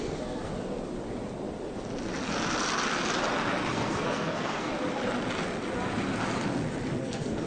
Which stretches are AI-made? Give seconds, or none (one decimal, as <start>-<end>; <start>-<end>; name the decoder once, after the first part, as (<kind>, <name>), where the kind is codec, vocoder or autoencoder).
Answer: 0.0-0.5 (codec, SNAC); 3.7-4.7; 7.0-7.5